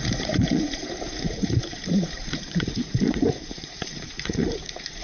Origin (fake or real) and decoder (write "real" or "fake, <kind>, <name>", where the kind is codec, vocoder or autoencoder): fake, vocoder, Vocos